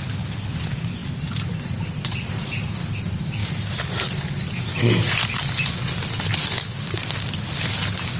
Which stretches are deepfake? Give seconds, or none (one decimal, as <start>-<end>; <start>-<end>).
none